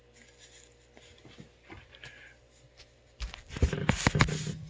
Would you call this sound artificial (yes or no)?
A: no